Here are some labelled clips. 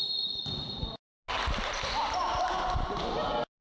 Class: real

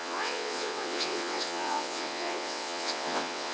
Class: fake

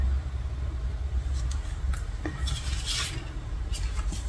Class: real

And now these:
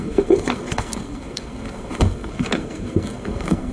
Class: fake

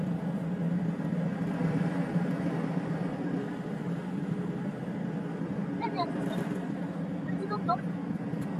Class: real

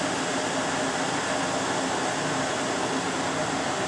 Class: real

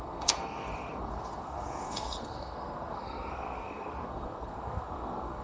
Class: fake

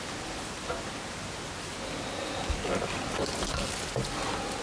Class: real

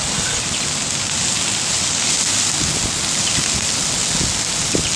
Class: real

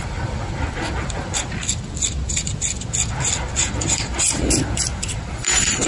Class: fake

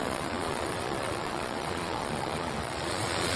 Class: fake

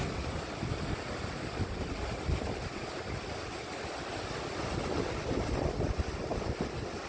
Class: real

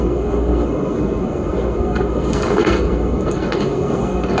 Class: fake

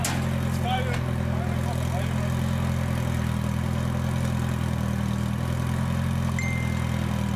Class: real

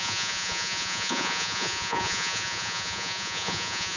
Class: fake